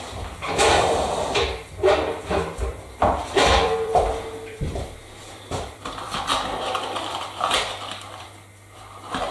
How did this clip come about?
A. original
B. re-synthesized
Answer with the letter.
B